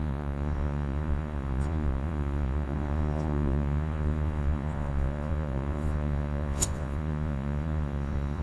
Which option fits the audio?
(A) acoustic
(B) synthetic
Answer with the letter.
B